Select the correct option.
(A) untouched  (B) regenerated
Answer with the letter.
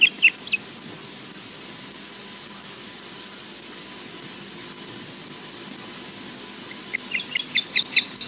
A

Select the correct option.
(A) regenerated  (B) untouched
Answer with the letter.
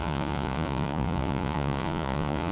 A